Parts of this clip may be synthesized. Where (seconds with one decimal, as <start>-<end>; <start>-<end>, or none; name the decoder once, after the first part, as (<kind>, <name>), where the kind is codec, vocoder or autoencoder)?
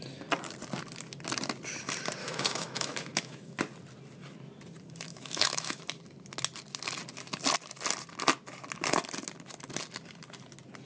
2.2-3.6 (autoencoder, DAC-VAE); 5.1-5.8